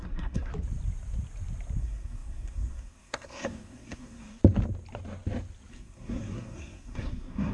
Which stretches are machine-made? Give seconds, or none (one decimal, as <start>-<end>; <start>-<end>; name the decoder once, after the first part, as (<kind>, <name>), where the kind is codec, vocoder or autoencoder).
0.0-0.5 (codec, SNAC); 1.8-4.4; 5.7-7.5